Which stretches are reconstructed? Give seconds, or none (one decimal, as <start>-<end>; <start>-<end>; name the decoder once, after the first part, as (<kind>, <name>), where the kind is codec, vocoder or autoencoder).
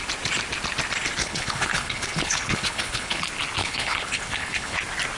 1.2-3.2 (codec, HILCodec); 3.6-4.8